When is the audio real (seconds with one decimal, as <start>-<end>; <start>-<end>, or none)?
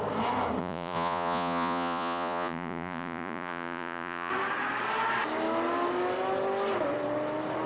0.0-0.6; 4.3-7.7